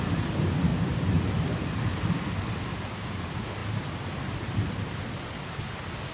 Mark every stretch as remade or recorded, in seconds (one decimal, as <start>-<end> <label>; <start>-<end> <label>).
0.0-6.1 recorded